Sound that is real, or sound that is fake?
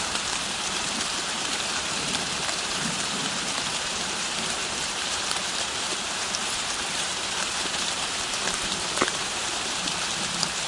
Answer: fake